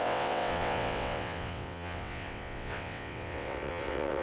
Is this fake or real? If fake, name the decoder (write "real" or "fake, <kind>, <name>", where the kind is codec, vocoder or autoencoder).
fake, vocoder, WaveNeXt